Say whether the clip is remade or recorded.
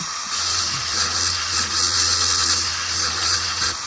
remade